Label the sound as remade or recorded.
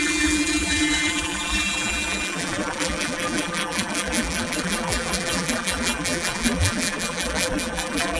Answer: remade